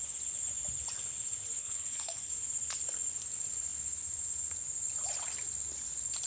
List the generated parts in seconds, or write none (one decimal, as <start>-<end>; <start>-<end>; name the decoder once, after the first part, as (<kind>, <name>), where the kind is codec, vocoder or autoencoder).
1.6-2.3 (codec, SNAC)